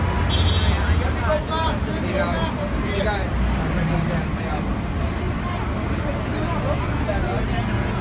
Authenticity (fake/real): real